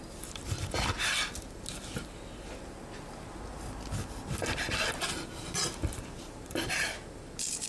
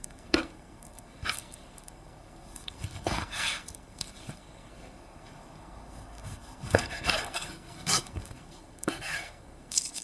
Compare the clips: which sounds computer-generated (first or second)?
second